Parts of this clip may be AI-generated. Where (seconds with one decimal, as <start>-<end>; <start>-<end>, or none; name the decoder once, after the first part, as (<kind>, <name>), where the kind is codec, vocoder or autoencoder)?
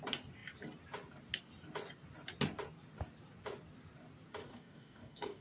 4.4-5.4 (codec, DAC)